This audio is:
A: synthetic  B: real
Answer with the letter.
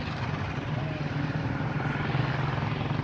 B